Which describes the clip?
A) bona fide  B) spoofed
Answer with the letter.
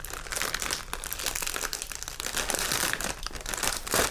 B